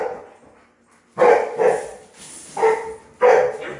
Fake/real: real